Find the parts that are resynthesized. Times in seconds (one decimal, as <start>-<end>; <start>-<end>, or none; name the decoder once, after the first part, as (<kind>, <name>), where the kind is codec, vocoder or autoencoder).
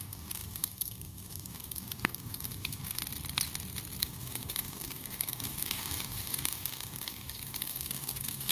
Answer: 0.0-3.0 (codec, DAC); 4.0-8.5